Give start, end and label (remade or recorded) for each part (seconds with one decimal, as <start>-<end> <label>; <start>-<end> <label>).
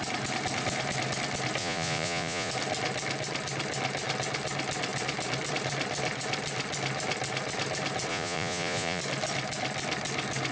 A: 0.0-1.6 recorded; 1.6-2.5 remade; 2.5-8.1 recorded; 8.1-9.0 remade; 9.0-10.5 recorded